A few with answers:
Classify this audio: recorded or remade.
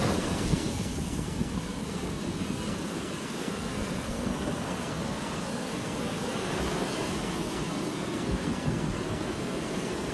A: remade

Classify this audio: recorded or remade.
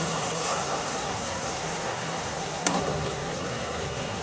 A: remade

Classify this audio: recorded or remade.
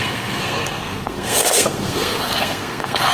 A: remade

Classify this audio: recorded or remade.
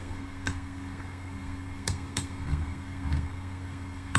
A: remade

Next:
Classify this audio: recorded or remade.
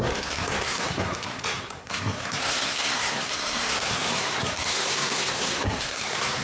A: remade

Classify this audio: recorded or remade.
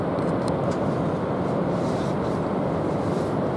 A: recorded